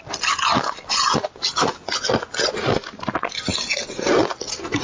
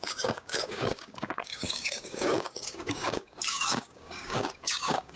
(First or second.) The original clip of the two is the first